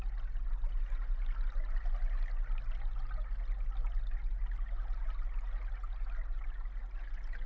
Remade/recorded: recorded